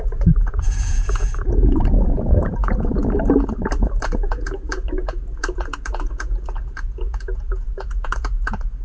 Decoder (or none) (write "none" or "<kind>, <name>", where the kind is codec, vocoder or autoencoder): vocoder, Vocos